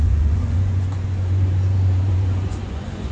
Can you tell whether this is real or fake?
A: fake